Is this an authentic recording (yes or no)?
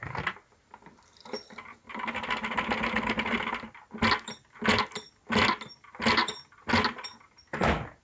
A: yes